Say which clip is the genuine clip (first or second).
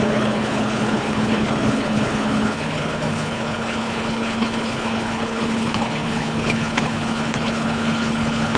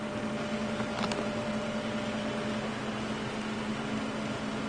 second